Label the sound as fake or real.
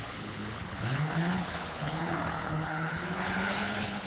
fake